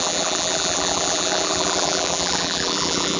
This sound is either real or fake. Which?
fake